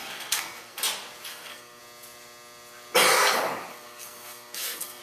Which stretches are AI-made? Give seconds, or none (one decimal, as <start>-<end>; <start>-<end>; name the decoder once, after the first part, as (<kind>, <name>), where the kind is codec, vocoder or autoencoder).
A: 0.0-0.8 (codec, SNAC); 1.3-1.8; 3.7-5.0